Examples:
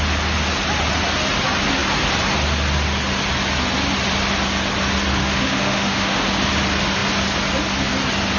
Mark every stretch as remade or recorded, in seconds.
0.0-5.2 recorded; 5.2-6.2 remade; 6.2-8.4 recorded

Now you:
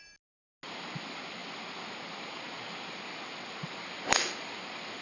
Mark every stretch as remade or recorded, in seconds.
0.0-5.0 recorded

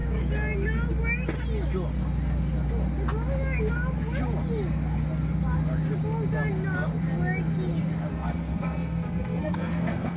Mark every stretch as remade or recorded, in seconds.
0.0-8.1 recorded; 8.1-10.2 remade